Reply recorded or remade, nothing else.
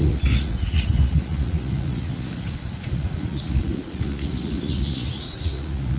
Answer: remade